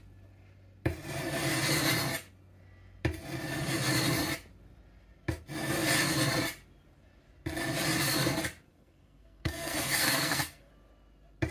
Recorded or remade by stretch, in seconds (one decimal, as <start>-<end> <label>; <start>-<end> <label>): 0.0-8.7 recorded; 8.7-10.7 remade; 10.7-11.5 recorded